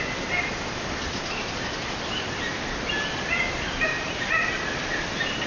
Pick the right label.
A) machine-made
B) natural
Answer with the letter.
B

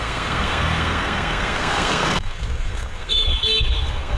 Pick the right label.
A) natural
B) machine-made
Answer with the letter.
B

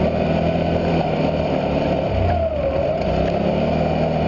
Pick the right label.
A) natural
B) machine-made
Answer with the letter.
A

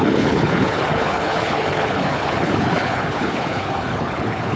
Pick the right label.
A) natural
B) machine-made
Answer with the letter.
B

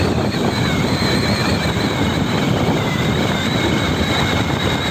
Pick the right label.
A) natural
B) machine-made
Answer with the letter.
A